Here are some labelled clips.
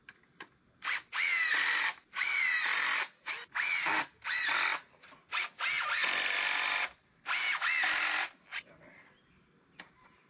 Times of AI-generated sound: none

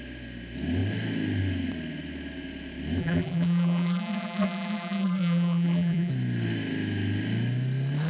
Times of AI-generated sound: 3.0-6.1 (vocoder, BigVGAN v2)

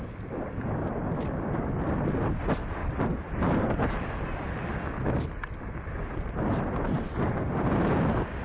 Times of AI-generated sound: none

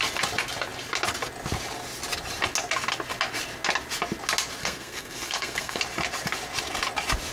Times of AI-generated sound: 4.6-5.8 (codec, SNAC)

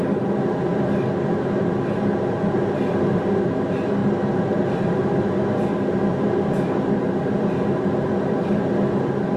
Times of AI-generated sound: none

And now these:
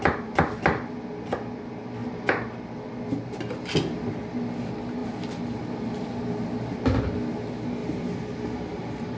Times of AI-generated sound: 2.0-2.6 (vocoder, BigVGAN v2); 7.8-9.2

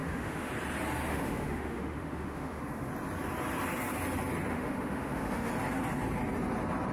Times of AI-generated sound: 0.0-0.5 (autoencoder, DAC-VAE); 1.1-2.9; 4.5-5.5